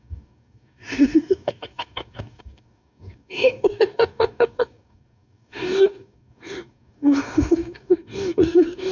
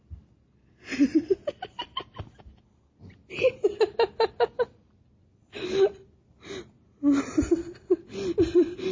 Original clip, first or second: second